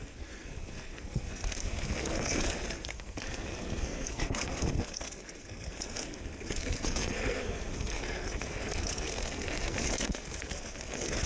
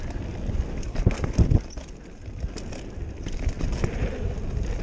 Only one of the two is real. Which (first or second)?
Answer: second